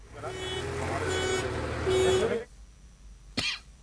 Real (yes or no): yes